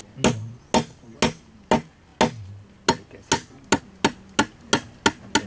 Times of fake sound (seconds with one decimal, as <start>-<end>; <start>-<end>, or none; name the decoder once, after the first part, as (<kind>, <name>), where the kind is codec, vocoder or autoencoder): none